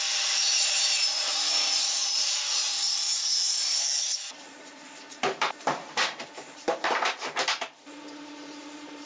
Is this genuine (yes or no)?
no